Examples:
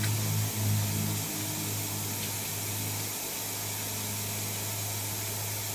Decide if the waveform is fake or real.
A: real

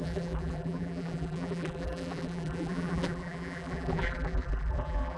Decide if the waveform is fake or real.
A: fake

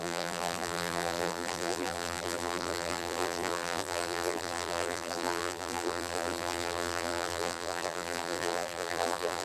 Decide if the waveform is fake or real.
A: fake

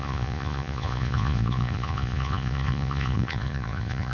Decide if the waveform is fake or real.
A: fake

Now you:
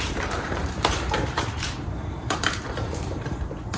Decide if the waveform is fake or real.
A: fake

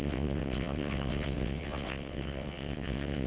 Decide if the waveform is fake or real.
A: fake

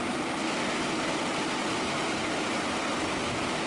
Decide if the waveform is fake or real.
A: real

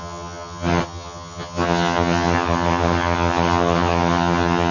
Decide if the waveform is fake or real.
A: fake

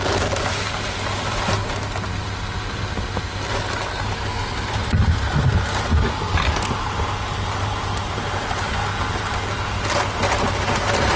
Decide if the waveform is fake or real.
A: real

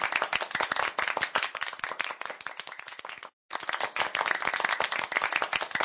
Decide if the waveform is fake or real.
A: real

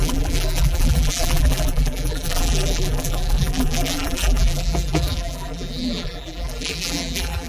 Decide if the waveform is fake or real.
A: fake